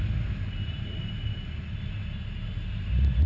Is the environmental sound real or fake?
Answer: real